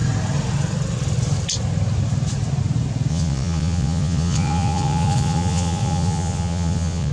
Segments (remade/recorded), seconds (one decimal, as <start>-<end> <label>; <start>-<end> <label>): 0.0-3.1 recorded; 3.1-7.1 remade